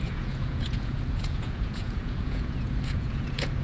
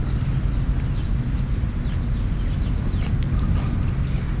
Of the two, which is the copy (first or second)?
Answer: first